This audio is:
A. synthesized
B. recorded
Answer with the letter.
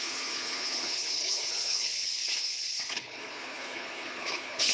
A